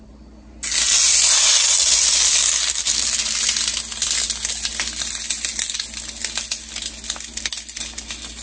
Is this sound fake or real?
real